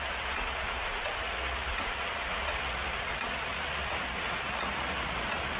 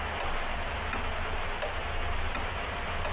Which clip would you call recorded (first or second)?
second